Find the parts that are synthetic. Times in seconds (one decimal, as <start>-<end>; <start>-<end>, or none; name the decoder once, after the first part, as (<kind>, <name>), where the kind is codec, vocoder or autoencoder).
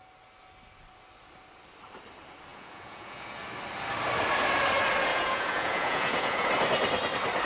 2.5-3.4 (vocoder, Vocos); 5.1-6.5